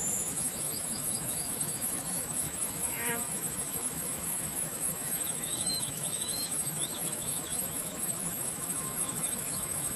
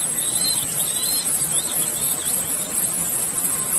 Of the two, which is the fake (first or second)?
first